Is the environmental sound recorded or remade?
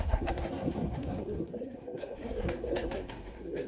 remade